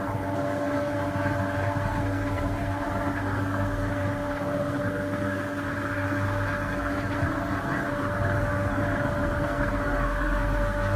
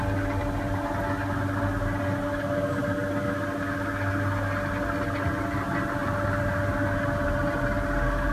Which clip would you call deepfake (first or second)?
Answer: first